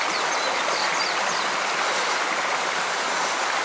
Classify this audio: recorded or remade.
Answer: recorded